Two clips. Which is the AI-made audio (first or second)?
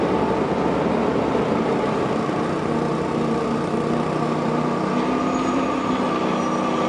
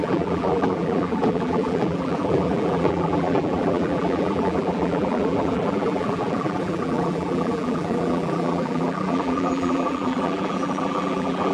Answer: second